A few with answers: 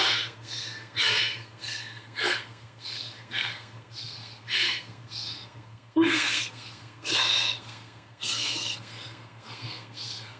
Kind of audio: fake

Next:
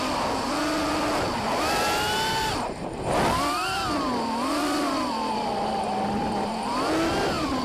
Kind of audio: real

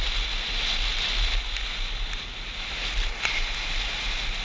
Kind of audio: real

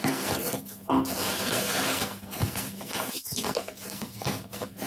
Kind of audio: fake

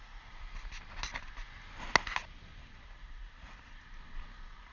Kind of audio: real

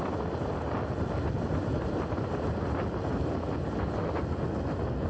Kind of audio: real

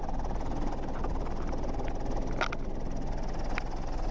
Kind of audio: real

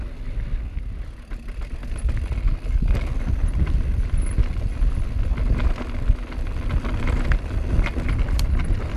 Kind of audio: real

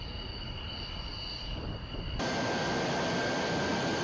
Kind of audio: real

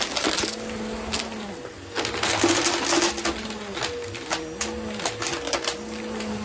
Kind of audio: real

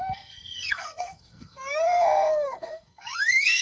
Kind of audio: fake